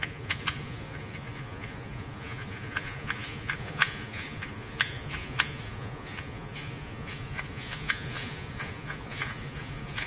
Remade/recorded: remade